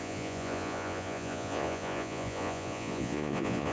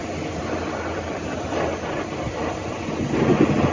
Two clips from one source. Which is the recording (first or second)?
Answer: second